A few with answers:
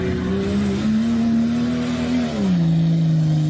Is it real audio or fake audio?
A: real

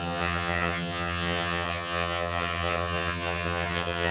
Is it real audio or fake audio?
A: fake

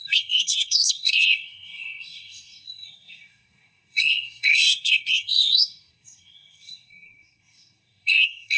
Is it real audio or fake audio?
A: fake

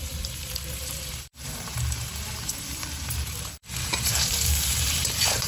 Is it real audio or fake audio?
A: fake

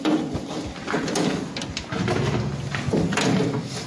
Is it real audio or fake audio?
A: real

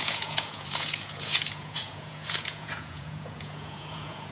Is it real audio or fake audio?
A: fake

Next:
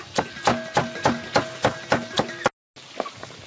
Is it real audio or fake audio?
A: real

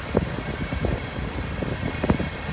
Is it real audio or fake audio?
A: real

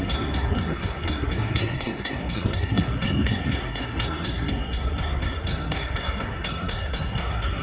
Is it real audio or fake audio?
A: fake